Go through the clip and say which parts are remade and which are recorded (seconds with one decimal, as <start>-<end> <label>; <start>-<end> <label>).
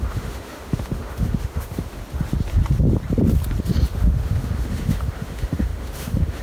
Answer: 0.0-2.0 remade; 2.0-3.9 recorded; 3.9-6.4 remade